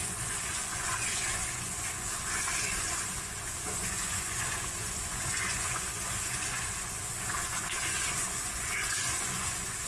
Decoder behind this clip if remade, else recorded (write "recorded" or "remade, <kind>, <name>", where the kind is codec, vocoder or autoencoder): remade, vocoder, Vocos